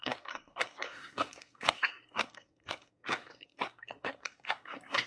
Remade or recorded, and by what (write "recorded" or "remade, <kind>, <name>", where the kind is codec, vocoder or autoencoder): remade, codec, SNAC